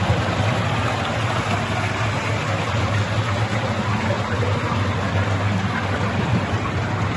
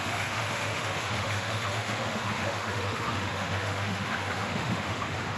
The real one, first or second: first